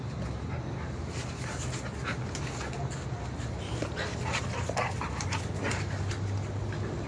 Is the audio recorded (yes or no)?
yes